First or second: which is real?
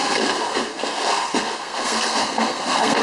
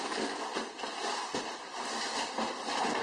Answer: second